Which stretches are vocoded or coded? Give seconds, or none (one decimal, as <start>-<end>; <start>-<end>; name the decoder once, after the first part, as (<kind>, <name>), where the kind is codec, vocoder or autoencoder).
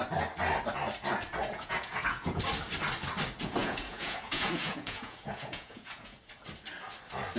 1.4-2.4 (vocoder, Vocos); 3.6-6.2